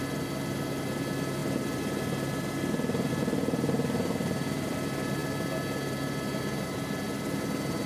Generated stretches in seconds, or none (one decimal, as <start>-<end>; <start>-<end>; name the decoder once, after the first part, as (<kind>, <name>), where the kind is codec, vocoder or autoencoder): none